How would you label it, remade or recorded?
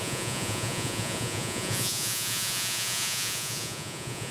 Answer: remade